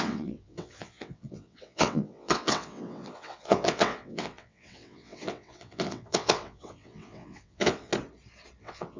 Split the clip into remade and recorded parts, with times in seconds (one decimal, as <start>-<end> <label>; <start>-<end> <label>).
0.0-7.9 remade; 7.9-8.6 recorded; 8.6-9.0 remade